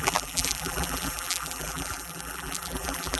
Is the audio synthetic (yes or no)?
yes